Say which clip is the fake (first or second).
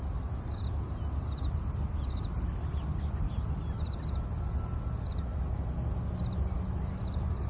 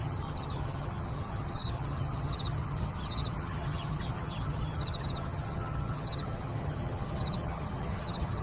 second